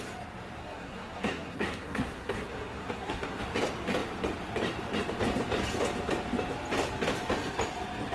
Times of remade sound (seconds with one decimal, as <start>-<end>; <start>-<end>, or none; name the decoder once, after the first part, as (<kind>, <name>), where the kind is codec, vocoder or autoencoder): 0.6-3.4 (codec, SNAC)